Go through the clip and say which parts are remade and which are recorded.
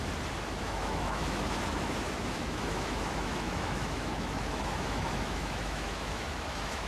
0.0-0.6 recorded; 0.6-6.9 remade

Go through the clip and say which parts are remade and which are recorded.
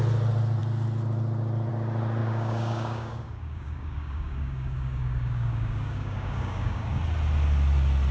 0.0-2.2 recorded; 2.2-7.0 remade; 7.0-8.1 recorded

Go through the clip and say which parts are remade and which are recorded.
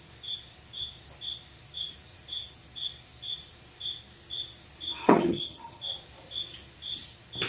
0.0-5.0 recorded; 5.0-5.8 remade; 5.8-7.5 recorded